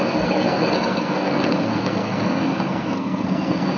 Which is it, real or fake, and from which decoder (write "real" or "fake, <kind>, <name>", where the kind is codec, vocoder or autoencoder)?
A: fake, codec, SNAC